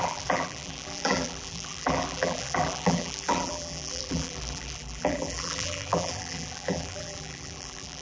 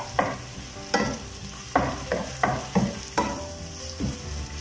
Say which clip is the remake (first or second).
first